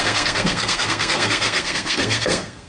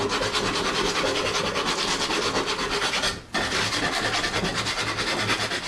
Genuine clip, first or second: second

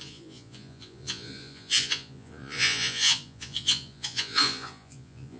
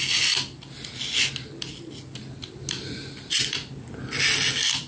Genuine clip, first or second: second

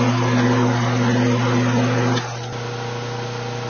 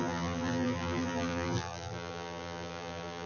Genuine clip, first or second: first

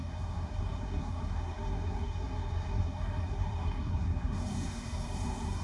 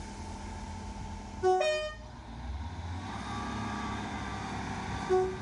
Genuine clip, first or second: second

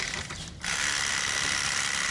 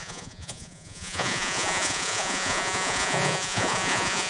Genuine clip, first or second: first